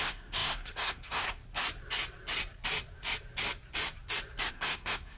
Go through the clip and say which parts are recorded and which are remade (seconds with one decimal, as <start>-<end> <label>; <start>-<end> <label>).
0.0-1.4 remade; 1.4-4.5 recorded; 4.5-5.2 remade